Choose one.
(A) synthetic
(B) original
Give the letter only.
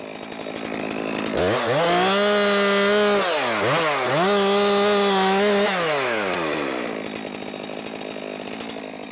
B